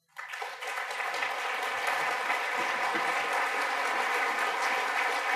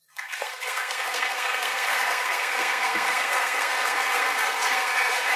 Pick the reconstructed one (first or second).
second